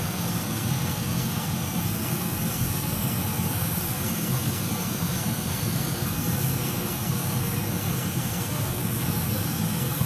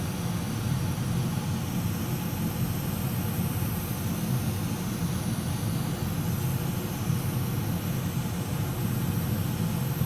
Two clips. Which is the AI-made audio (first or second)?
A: first